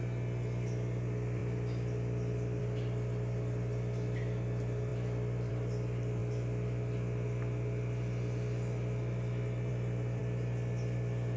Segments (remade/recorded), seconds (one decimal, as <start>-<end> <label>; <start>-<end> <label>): 0.0-11.4 recorded